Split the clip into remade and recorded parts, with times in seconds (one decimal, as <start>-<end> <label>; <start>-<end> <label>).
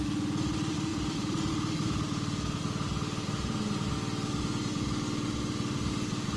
0.0-0.9 recorded; 0.9-1.5 remade; 1.5-6.4 recorded